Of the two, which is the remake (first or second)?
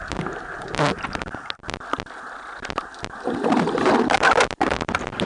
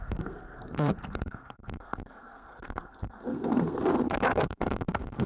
second